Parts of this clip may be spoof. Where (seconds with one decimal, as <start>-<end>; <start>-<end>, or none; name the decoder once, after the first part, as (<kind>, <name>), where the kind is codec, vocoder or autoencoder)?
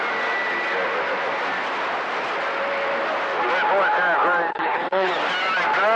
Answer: 4.5-5.1 (codec, HILCodec)